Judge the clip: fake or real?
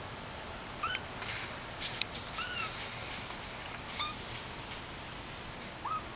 real